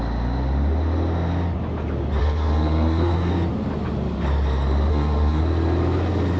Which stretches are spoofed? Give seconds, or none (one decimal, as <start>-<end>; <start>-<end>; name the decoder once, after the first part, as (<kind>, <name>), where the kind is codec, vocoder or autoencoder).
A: 2.2-3.3 (codec, SNAC); 4.9-5.4

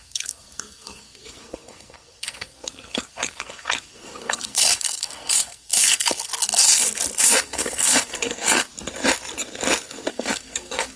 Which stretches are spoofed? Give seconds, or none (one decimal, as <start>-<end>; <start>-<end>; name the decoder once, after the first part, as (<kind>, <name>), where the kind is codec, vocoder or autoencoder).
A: 0.0-6.3 (codec, SNAC); 7.2-8.7; 10.1-11.0

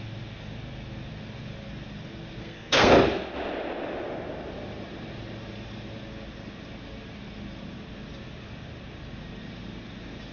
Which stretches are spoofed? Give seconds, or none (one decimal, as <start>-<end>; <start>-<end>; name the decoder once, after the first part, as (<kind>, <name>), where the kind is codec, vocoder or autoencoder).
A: 2.4-2.9 (codec, SNAC)

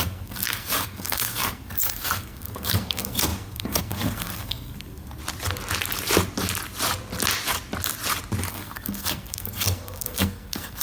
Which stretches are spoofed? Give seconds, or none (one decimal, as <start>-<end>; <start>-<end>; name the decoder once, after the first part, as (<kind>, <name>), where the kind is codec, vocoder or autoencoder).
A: 0.0-5.2 (codec, SNAC); 8.5-10.8